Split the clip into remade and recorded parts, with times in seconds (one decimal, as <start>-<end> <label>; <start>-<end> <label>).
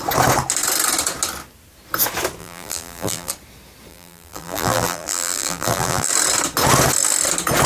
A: 0.0-2.4 recorded; 2.4-3.3 remade; 3.3-3.9 recorded; 3.9-6.1 remade; 6.1-7.7 recorded